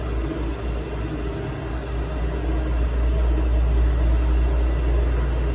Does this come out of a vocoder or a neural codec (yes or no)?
no